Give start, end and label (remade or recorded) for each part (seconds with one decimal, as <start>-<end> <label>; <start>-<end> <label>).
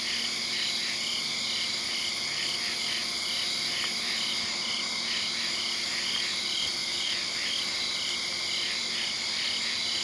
0.0-10.0 recorded